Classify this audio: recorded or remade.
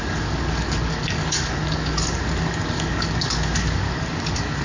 remade